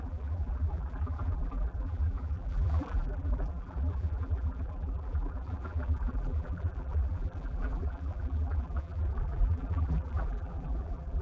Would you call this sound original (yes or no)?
no